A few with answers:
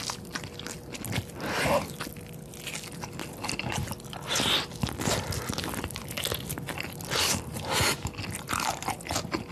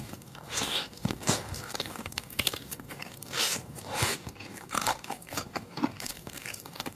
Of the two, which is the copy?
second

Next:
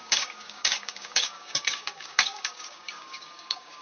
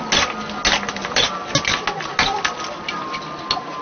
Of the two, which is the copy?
first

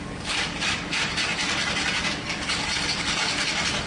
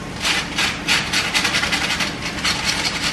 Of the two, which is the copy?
first